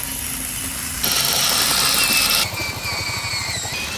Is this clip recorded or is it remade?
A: recorded